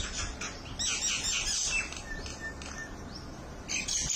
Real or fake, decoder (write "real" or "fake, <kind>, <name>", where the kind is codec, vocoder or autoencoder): real